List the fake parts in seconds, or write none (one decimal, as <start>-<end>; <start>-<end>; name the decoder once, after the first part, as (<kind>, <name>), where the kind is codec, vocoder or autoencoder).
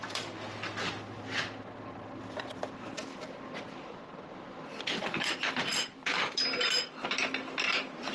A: none